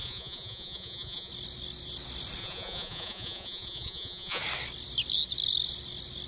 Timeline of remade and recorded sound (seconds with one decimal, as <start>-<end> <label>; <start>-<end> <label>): 0.0-1.3 remade; 1.3-2.4 recorded; 2.4-4.4 remade; 4.4-6.3 recorded

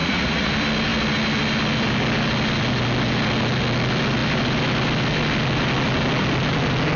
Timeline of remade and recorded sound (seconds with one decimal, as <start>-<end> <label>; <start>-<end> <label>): 0.0-0.5 remade; 0.5-7.0 recorded

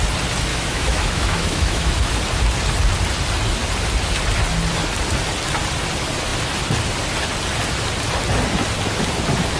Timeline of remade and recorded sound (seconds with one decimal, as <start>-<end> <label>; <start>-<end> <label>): 0.0-0.5 recorded; 0.5-1.9 remade; 1.9-9.6 recorded

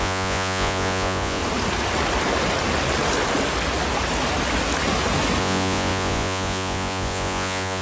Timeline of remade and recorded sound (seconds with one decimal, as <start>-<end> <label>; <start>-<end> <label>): 0.0-1.4 remade; 1.4-5.4 recorded; 5.4-7.8 remade

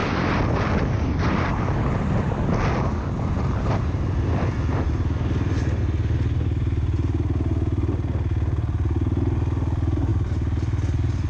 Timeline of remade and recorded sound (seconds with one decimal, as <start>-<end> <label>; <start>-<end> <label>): 0.0-11.3 recorded